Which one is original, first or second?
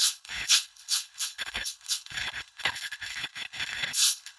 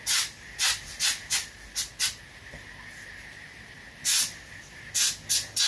second